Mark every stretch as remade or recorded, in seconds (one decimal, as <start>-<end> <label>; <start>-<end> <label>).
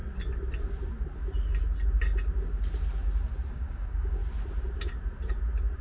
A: 0.0-3.5 recorded; 3.5-4.2 remade; 4.2-5.8 recorded